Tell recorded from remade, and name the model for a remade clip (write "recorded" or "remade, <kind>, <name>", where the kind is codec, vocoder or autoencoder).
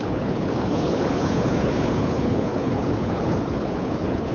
remade, codec, HILCodec